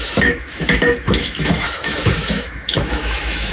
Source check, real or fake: fake